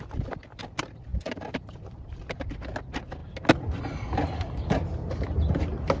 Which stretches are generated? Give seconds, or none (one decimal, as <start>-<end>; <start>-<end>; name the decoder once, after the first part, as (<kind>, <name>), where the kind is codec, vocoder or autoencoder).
1.1-2.5 (vocoder, BigVGAN v2)